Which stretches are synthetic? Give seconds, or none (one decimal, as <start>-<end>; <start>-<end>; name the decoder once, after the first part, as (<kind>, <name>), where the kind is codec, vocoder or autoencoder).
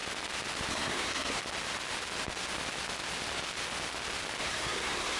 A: 0.7-1.4 (codec, SNAC); 4.4-5.2